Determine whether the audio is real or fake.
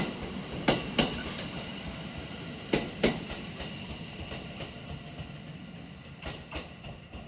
real